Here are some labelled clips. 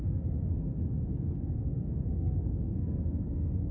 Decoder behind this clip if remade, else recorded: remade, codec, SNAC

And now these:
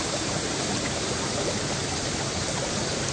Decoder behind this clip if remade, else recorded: recorded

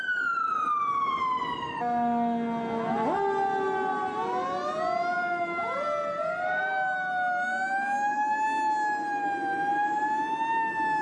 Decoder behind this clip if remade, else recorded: recorded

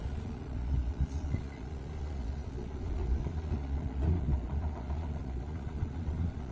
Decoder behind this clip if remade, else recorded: remade, vocoder, Vocos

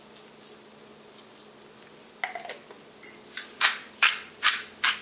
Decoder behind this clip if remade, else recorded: recorded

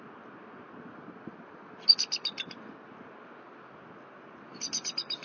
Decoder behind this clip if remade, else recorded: recorded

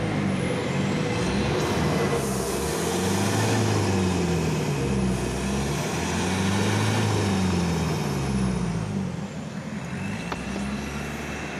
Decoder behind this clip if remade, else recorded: recorded